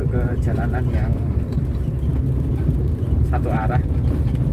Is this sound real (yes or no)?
no